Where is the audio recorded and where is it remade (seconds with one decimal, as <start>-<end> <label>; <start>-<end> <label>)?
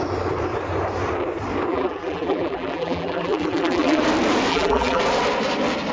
0.0-1.7 recorded; 1.7-4.0 remade; 4.0-4.5 recorded; 4.5-5.0 remade; 5.0-5.9 recorded